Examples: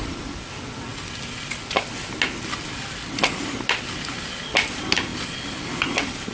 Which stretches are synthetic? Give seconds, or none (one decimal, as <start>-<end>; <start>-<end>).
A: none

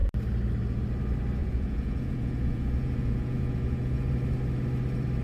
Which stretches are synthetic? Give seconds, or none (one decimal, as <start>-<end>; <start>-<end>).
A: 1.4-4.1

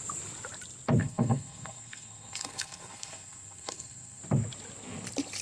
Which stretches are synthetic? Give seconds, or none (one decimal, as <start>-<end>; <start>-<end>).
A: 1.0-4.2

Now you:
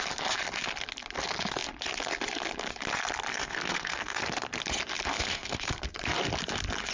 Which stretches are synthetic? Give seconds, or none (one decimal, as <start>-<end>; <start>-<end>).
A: 3.3-4.2; 5.1-5.7

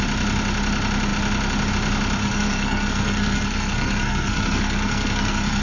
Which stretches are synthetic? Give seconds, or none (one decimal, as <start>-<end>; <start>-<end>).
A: 2.2-5.6